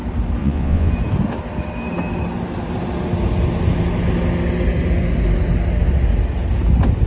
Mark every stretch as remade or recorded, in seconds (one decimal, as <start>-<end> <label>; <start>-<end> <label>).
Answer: 0.0-0.4 recorded; 0.4-0.9 remade; 0.9-7.1 recorded